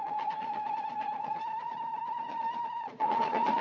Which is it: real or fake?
fake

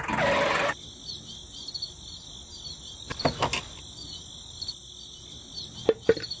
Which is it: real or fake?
real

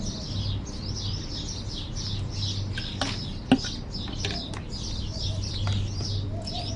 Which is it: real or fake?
real